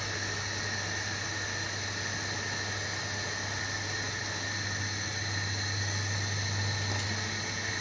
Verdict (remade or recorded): recorded